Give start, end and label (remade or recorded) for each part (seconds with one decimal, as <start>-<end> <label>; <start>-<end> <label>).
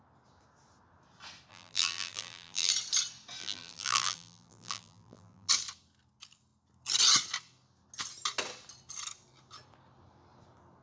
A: 0.0-1.5 recorded; 1.5-2.7 remade; 2.7-3.4 recorded; 3.4-5.5 remade; 5.5-10.8 recorded